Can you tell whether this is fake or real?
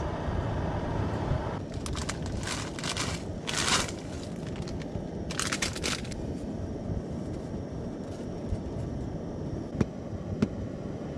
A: real